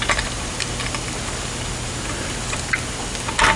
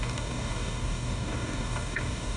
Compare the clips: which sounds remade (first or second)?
second